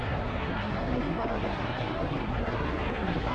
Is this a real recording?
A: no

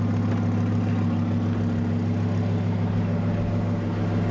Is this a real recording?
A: yes